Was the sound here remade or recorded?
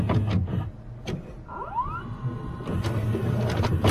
recorded